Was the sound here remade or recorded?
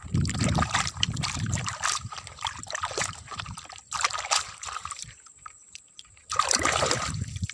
remade